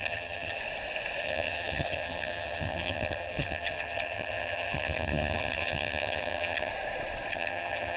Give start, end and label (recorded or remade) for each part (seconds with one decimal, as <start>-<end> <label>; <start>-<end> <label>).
0.0-0.6 remade; 0.6-1.2 recorded; 1.2-6.7 remade; 6.7-7.3 recorded; 7.3-8.0 remade